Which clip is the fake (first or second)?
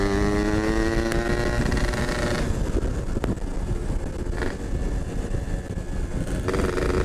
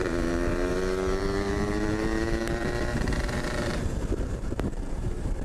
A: second